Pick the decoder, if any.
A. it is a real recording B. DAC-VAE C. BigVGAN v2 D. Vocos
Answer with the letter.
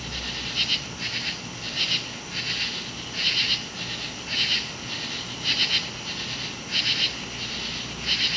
A